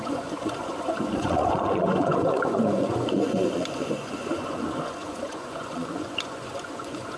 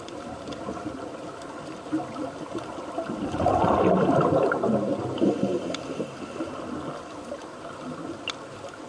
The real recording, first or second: second